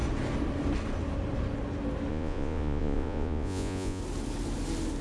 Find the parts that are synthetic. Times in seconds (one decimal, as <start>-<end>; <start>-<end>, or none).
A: 2.1-4.0